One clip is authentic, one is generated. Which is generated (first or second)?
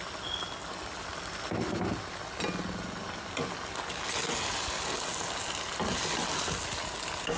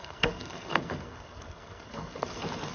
second